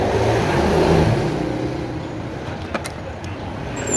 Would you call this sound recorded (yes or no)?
yes